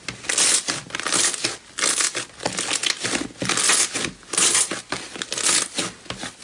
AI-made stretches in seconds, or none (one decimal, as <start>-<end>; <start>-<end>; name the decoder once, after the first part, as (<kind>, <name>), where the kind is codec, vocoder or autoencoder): none